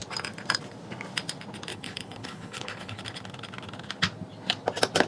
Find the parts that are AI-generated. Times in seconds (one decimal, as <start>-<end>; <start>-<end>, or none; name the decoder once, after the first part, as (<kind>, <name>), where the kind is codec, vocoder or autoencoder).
1.7-3.0 (codec, HILCodec)